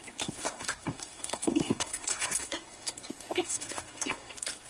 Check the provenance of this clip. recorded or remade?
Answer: remade